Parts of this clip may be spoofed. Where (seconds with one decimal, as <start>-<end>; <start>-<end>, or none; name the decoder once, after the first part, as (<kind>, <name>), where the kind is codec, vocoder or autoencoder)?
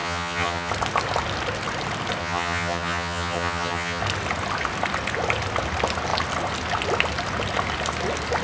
0.0-0.7 (vocoder, HiFi-GAN); 2.2-4.0